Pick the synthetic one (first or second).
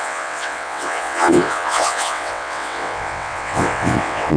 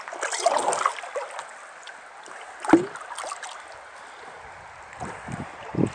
first